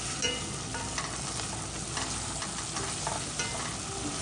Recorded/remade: recorded